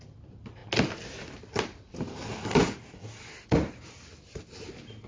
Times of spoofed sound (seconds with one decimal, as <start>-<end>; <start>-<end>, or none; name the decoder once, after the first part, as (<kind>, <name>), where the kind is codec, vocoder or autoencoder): none